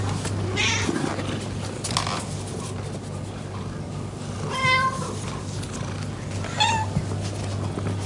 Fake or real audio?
real